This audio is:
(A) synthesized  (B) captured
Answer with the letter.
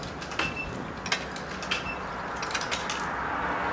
B